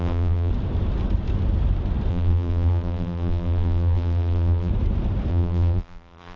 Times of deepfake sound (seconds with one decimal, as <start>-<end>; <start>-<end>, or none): 0.0-0.5; 2.1-4.7; 5.3-6.4